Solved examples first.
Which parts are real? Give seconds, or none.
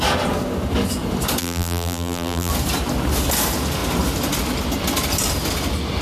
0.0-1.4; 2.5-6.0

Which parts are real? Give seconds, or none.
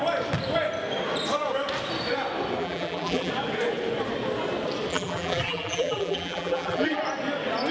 0.0-2.6; 3.3-4.9; 7.0-7.7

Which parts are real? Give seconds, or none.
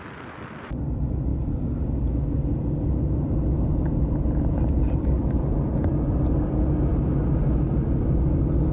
0.0-8.7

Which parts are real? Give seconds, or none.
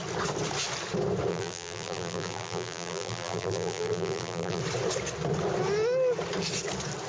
0.0-1.3; 4.6-7.1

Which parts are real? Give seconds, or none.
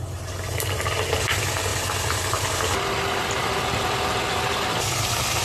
0.0-5.4